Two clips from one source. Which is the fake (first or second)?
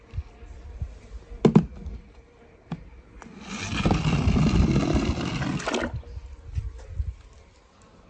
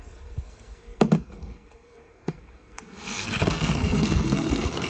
second